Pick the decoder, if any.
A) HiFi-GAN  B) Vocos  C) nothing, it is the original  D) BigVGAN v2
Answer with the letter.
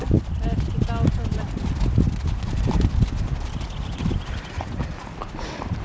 C